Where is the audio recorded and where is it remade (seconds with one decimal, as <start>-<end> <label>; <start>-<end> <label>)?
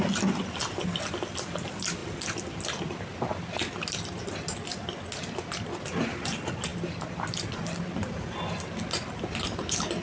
0.0-10.0 recorded